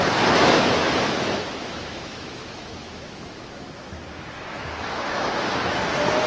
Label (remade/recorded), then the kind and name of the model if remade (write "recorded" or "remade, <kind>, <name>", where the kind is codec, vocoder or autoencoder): remade, autoencoder, DAC-VAE